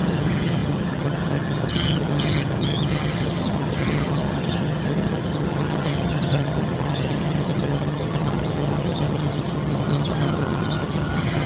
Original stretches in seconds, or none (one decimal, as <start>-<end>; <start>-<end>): none

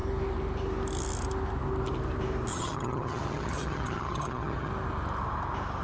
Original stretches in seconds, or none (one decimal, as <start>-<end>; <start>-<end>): 0.0-2.5; 4.7-5.8

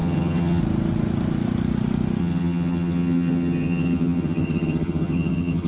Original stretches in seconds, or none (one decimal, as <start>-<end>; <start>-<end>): 0.6-2.2

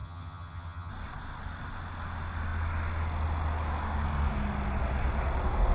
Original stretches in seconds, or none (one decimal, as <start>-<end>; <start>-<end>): 0.9-5.7

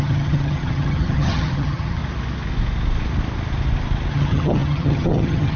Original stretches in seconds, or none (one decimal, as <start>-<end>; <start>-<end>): 2.0-4.1

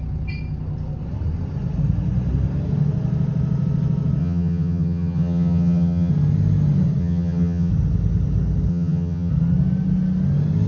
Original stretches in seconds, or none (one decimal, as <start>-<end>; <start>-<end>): 0.0-4.2; 6.1-7.0; 7.7-8.7; 9.3-10.7

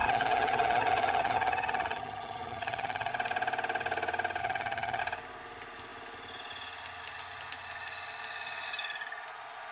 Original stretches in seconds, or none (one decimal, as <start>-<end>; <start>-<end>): 3.1-4.4; 5.0-9.7

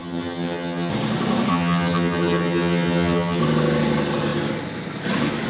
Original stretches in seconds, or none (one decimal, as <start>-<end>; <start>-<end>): 0.9-1.5; 3.4-5.5